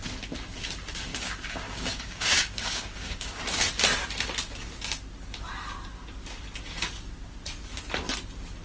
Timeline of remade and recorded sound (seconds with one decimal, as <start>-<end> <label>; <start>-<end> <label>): 0.0-1.1 recorded; 1.1-3.4 remade; 3.4-8.6 recorded